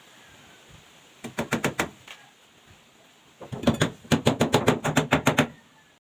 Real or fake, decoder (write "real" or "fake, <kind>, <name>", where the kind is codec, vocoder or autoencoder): real